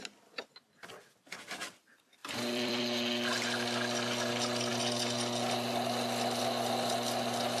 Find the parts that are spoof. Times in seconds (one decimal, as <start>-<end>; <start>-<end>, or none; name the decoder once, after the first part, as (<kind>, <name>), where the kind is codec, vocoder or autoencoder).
2.2-2.8 (vocoder, BigVGAN v2)